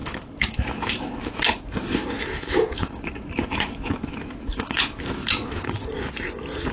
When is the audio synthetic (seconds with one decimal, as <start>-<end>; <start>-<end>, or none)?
0.0-1.4; 2.0-5.9